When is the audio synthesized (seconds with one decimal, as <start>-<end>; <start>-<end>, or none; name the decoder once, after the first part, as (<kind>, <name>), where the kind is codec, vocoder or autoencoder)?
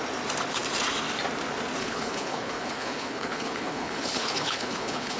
1.8-5.2 (codec, HILCodec)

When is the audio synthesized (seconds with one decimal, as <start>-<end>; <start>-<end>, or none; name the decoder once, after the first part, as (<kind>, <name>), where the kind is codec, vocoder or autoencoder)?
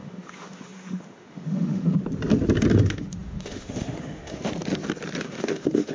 0.0-2.0 (autoencoder, DAC-VAE); 2.8-4.5; 5.2-5.9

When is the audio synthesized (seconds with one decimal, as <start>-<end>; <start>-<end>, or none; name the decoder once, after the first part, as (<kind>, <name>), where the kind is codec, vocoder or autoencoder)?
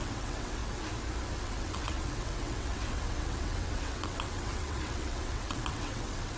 0.0-0.6 (vocoder, WaveNeXt); 1.4-6.4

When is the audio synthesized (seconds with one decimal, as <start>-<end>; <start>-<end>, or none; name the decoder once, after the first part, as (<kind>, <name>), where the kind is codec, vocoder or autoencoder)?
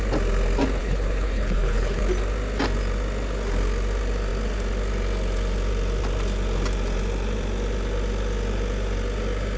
0.8-2.0 (codec, HILCodec)